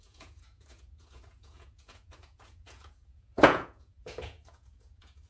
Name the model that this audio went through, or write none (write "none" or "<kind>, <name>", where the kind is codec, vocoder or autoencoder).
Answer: vocoder, Vocos